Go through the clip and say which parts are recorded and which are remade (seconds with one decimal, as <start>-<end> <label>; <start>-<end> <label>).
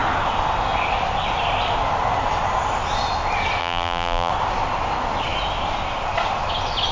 0.0-3.6 recorded; 3.6-4.3 remade; 4.3-6.9 recorded